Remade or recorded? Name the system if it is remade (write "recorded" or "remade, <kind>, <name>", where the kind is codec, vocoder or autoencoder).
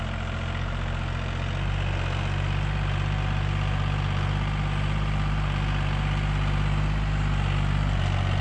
recorded